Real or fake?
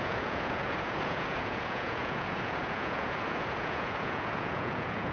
fake